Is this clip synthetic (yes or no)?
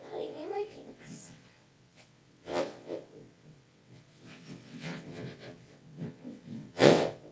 yes